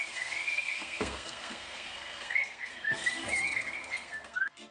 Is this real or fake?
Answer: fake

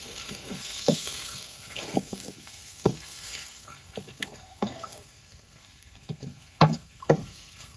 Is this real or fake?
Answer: fake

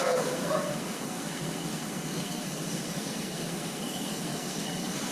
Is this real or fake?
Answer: fake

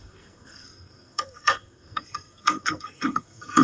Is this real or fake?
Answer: fake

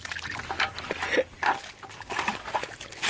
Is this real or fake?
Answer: real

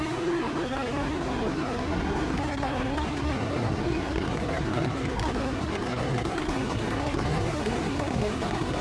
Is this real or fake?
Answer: fake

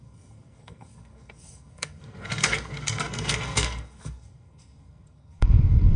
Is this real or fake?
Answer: fake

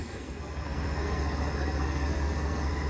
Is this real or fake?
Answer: fake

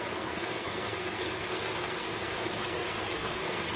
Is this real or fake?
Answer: fake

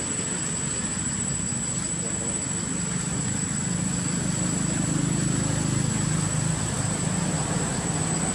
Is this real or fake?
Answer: real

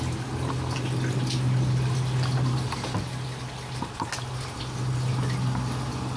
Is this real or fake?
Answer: real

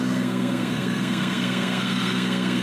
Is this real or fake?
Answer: fake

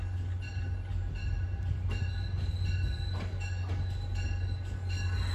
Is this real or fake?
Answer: real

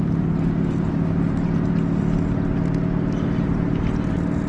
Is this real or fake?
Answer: real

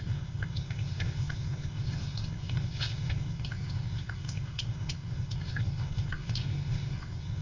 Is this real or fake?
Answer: fake